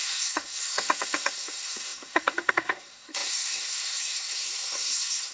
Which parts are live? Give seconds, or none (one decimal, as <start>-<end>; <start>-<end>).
none